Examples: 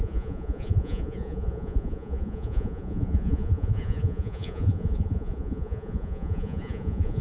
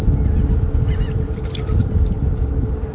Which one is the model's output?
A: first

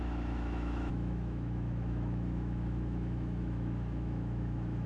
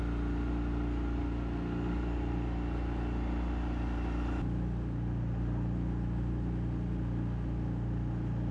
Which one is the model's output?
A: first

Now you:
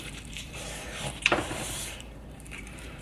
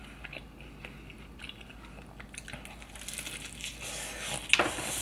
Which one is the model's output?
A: first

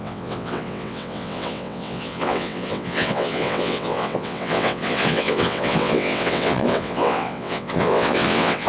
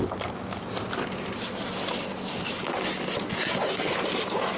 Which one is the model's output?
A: first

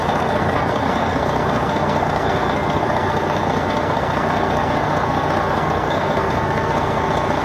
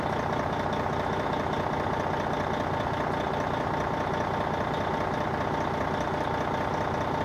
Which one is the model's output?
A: first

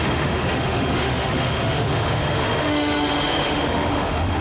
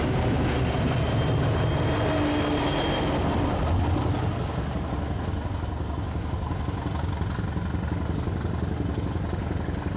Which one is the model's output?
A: first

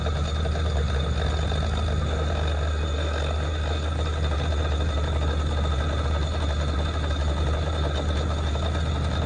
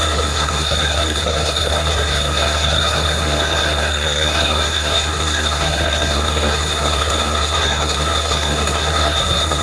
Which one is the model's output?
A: second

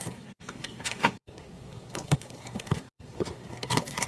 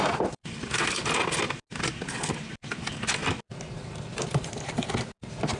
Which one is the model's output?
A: first